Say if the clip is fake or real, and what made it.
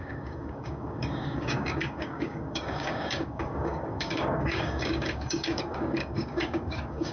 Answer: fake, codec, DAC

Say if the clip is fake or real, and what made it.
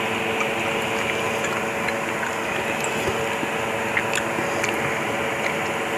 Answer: real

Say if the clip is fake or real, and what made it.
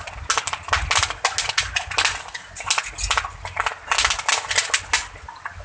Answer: real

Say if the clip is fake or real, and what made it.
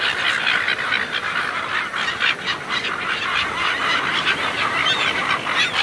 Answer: real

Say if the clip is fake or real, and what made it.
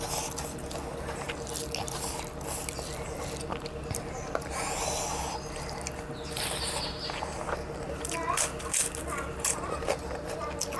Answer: real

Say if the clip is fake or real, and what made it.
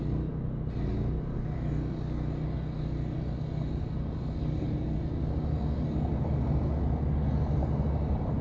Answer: real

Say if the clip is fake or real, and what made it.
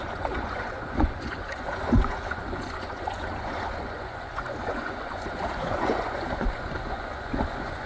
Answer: fake, vocoder, Vocos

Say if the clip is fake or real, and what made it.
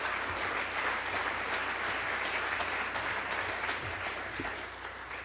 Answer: real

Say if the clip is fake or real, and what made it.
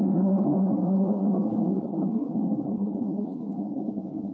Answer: fake, codec, SNAC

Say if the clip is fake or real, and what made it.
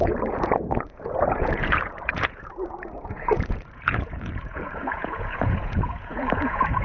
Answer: fake, vocoder, Vocos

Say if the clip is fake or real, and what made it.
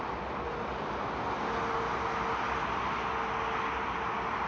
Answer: real